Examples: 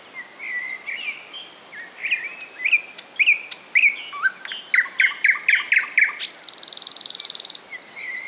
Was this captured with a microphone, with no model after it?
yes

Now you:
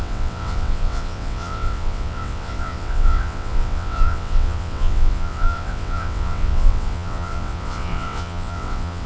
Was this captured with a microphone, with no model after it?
no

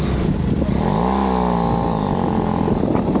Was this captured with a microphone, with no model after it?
yes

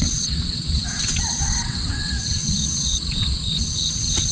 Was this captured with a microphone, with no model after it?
no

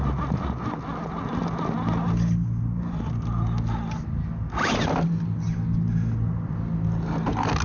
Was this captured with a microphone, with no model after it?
yes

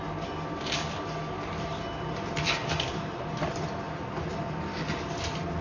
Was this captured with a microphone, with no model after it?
yes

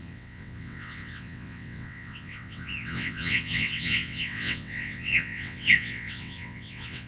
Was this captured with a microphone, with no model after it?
no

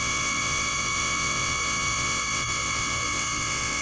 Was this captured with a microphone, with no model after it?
no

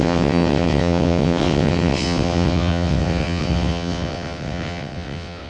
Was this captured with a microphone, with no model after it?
no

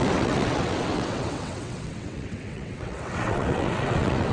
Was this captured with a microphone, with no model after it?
no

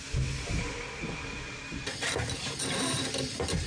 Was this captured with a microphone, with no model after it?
yes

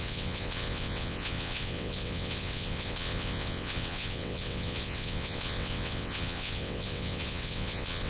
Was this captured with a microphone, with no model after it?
no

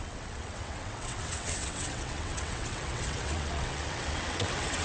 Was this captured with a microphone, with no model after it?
no